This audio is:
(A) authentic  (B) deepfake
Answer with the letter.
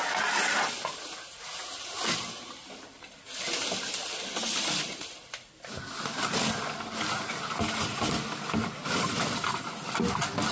A